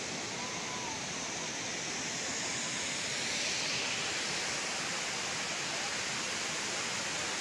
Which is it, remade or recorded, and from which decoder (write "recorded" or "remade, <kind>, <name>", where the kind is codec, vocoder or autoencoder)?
recorded